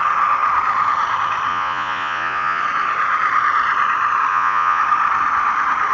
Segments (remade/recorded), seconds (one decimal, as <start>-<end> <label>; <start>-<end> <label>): 0.0-1.5 recorded; 1.5-2.6 remade; 2.6-4.3 recorded; 4.3-4.8 remade; 4.8-5.9 recorded